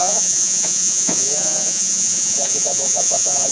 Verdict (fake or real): fake